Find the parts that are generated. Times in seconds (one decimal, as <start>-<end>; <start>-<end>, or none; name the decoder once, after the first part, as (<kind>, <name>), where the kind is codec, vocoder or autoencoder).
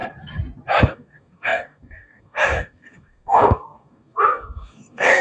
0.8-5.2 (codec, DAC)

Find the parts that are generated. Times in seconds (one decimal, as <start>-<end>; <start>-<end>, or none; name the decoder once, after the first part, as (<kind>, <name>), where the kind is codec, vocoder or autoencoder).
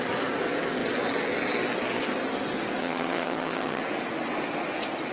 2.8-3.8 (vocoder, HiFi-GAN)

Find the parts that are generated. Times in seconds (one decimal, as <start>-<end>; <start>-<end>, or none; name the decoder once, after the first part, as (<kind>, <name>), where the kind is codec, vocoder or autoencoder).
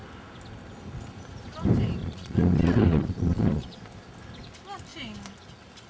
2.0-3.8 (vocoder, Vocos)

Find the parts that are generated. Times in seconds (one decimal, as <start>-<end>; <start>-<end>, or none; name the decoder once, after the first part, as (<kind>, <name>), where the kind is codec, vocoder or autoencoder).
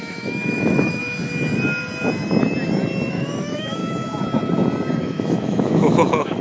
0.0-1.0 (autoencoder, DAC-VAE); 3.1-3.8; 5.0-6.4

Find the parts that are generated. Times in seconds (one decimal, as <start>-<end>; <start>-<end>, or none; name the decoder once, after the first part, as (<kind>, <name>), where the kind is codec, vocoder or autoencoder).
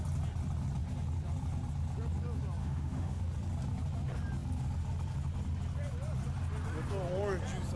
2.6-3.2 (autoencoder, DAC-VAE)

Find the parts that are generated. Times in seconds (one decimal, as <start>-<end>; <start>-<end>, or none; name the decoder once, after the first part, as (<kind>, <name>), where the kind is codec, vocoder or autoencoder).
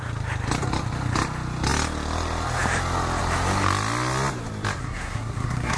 4.8-5.8 (codec, SNAC)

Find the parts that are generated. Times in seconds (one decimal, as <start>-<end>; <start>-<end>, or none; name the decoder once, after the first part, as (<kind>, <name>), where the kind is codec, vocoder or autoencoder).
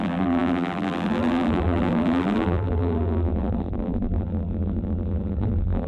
0.0-5.9 (vocoder, BigVGAN v2)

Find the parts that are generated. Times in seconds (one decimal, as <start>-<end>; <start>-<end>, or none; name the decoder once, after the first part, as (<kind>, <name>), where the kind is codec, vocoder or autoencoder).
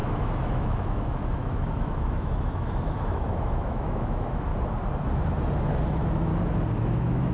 0.0-4.5 (autoencoder, DAC-VAE); 5.7-6.3; 6.8-7.3